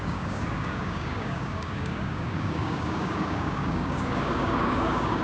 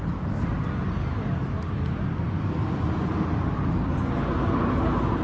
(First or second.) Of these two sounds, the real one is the second